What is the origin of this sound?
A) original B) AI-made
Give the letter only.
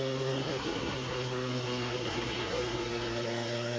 B